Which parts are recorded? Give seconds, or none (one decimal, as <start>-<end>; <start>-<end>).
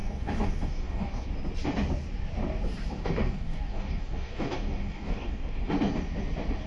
1.3-3.0; 5.7-6.7